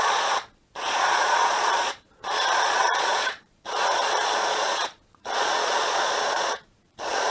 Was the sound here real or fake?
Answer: fake